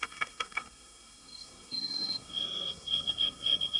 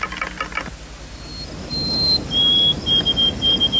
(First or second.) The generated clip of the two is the first